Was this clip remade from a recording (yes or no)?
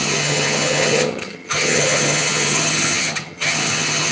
yes